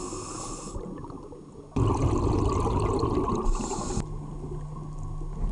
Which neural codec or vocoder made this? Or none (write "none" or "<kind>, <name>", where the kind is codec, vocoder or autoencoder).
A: none